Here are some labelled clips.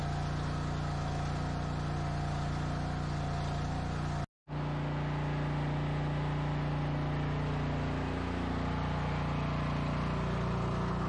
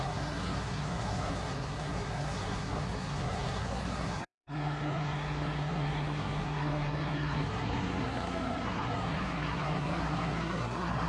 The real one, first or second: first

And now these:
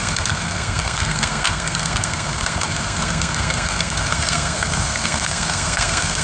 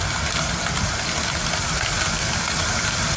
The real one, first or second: second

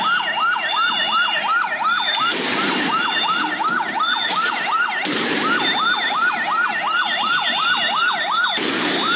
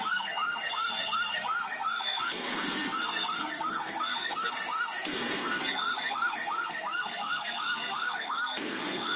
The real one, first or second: first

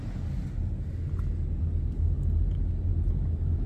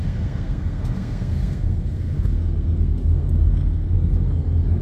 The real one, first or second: first